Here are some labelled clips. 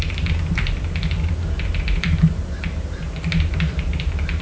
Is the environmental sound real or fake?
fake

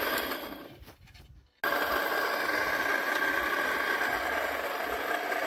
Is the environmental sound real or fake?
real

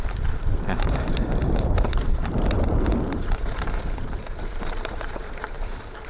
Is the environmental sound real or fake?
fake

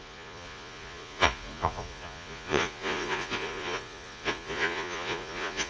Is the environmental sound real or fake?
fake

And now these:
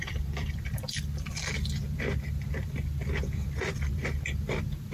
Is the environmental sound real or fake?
fake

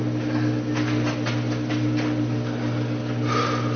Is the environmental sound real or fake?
real